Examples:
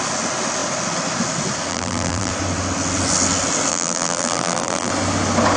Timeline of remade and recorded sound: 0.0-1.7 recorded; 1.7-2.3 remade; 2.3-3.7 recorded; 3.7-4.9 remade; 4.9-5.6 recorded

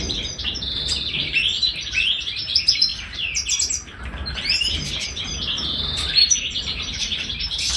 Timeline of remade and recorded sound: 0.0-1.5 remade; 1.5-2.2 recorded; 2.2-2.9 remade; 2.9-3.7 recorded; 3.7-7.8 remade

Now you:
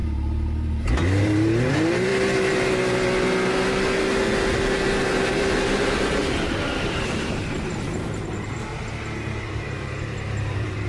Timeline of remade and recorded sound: 0.0-2.1 remade; 2.1-5.0 recorded; 5.0-8.7 remade; 8.7-9.5 recorded; 9.5-10.9 remade

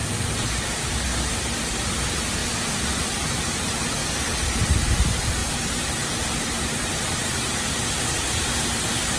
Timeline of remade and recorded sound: 0.0-2.4 remade; 2.4-3.3 recorded; 3.3-4.0 remade; 4.0-4.7 recorded; 4.7-9.2 remade